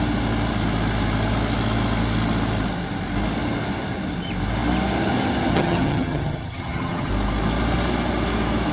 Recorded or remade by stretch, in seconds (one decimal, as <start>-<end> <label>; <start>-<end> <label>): 0.0-5.5 recorded; 5.5-7.1 remade; 7.1-8.7 recorded